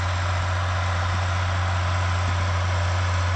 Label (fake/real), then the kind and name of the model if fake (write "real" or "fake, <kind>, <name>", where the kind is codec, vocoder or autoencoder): real